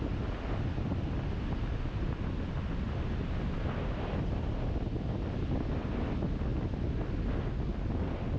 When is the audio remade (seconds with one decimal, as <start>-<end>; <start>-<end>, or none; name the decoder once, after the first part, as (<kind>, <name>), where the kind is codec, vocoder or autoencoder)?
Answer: 6.5-7.1 (vocoder, BigVGAN v2)